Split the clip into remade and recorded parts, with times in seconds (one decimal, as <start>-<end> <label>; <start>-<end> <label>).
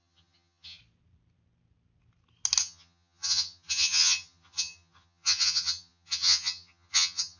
0.0-0.8 remade; 0.8-2.6 recorded; 2.6-7.4 remade